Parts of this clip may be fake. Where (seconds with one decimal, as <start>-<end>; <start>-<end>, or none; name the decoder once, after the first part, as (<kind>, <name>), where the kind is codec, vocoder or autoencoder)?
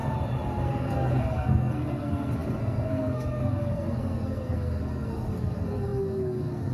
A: 0.6-6.7 (codec, SNAC)